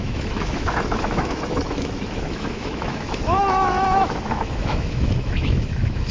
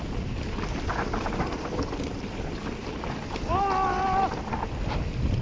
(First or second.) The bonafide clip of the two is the second